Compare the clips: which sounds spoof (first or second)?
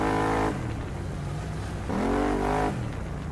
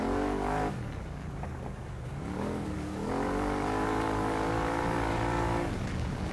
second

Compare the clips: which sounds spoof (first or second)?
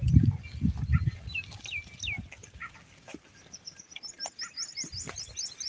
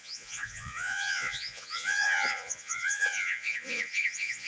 second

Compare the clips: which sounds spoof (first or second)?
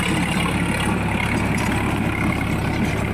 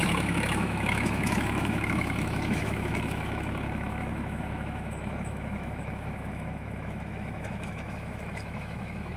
second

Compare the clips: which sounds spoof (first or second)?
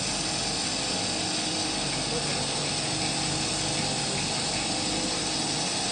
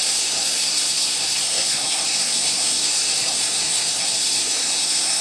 second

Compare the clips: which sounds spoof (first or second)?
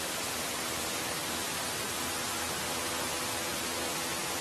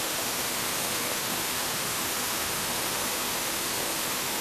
second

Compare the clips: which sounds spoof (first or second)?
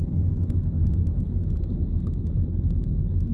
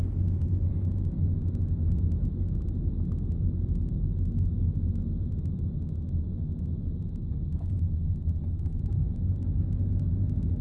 first